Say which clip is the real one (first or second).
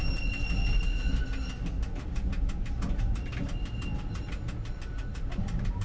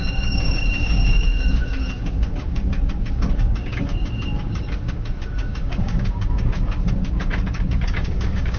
first